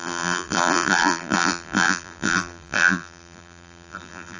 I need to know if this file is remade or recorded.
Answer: remade